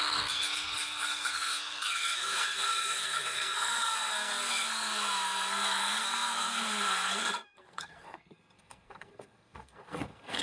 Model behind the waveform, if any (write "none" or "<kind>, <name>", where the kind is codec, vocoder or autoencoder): codec, SNAC